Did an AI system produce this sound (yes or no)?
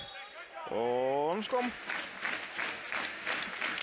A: no